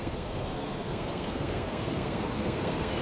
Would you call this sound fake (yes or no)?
yes